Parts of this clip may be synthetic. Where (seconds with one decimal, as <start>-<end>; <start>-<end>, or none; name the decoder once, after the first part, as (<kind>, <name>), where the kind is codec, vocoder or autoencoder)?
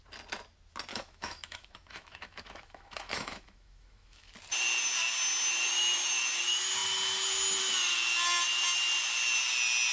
0.9-4.3 (autoencoder, DAC-VAE)